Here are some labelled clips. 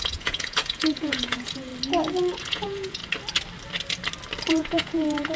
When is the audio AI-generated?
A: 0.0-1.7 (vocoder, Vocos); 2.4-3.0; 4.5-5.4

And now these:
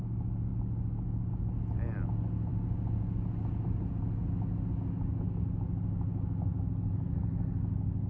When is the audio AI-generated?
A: none

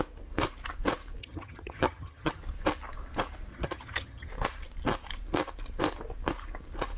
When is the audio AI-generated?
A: 1.2-2.4 (vocoder, HiFi-GAN); 3.5-4.3

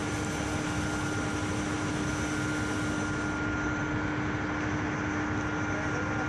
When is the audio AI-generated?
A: none